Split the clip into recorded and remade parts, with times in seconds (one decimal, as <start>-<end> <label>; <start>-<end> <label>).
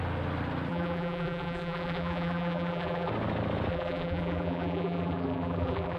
0.0-0.7 recorded; 0.7-3.1 remade; 3.1-3.7 recorded; 3.7-6.0 remade